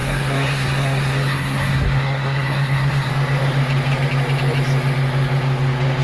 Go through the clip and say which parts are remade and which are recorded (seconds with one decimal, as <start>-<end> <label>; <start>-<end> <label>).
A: 0.0-3.1 remade; 3.1-6.0 recorded